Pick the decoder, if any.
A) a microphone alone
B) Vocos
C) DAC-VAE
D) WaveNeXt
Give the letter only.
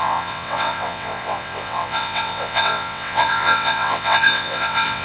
D